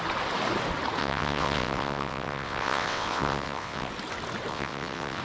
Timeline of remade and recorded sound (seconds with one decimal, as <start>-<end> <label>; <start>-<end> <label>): 0.0-1.0 recorded; 1.0-3.9 remade; 3.9-4.5 recorded; 4.5-5.2 remade